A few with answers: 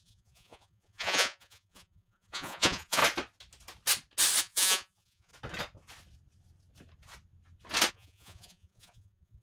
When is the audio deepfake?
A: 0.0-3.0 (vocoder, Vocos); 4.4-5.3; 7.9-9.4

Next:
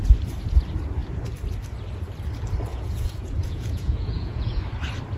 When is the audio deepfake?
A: 2.7-4.6 (vocoder, Vocos)

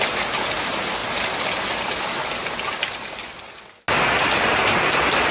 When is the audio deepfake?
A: none

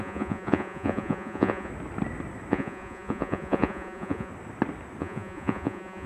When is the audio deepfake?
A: 0.0-1.7 (vocoder, Vocos); 2.5-4.3; 5.0-6.1